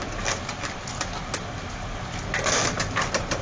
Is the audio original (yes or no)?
yes